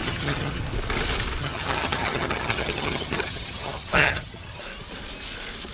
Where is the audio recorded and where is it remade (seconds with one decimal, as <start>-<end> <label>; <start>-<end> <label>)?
0.0-0.6 remade; 0.6-1.4 recorded; 1.4-4.6 remade; 4.6-5.7 recorded

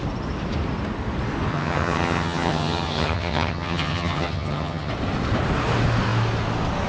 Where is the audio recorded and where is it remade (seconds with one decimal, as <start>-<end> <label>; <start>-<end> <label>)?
0.0-1.5 recorded; 1.5-4.9 remade; 4.9-6.9 recorded

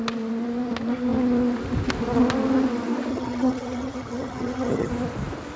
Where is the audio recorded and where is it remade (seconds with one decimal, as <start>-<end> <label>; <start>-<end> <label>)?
0.0-3.1 recorded; 3.1-4.9 remade; 4.9-5.6 recorded

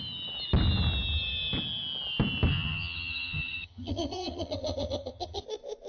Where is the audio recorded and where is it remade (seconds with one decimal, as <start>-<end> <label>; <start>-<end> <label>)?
0.0-2.5 recorded; 2.5-5.4 remade; 5.4-5.9 recorded

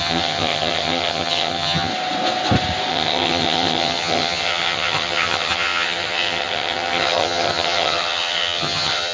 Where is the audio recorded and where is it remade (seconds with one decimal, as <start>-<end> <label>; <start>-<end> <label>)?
0.0-1.9 remade; 1.9-2.9 recorded; 2.9-9.1 remade

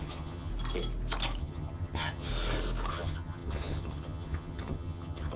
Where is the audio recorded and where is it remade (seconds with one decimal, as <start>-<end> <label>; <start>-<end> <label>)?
0.0-0.5 remade; 0.5-1.4 recorded; 1.4-2.3 remade; 2.3-2.9 recorded; 2.9-5.4 remade

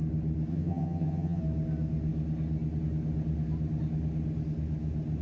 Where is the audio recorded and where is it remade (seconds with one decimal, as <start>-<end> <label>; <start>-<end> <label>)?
0.0-0.5 recorded; 0.5-1.4 remade; 1.4-5.2 recorded

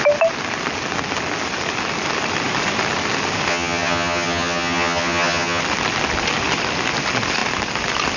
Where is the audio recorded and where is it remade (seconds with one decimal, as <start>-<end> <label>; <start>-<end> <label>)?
0.0-3.5 recorded; 3.5-5.6 remade; 5.6-8.2 recorded